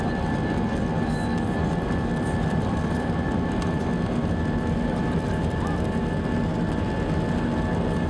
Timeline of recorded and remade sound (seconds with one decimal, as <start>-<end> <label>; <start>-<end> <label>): 0.0-2.1 recorded; 2.1-4.4 remade; 4.4-8.1 recorded